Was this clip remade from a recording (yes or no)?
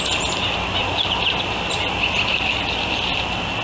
no